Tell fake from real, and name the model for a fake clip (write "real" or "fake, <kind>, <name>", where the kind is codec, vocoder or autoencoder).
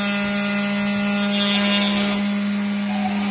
real